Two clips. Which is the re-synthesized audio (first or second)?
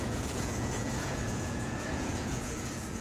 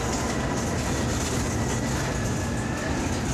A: first